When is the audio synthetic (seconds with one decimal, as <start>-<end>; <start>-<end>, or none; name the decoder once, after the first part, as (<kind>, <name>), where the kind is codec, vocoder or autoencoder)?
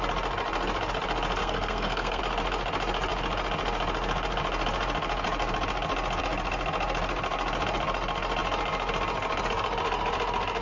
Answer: 1.4-2.2 (codec, SNAC)